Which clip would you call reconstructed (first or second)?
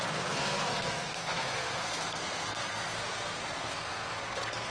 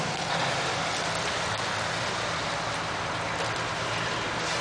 first